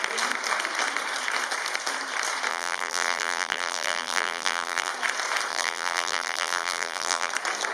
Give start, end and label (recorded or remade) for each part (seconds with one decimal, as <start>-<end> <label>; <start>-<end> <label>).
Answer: 0.0-2.5 recorded; 2.5-4.9 remade; 4.9-5.5 recorded; 5.5-7.3 remade; 7.3-7.7 recorded